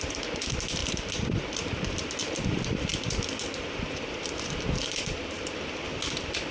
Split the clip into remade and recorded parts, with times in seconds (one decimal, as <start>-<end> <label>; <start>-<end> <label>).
0.0-6.5 remade